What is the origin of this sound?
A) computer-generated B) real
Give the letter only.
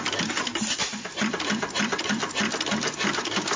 B